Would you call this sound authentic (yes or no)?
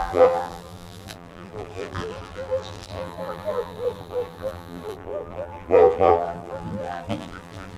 no